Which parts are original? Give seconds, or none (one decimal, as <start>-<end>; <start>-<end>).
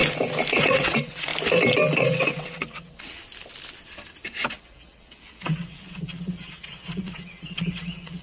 0.0-0.5; 1.3-2.0; 3.2-4.4